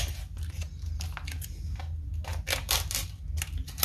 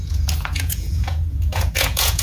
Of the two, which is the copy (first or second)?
second